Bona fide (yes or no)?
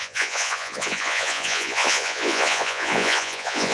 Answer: no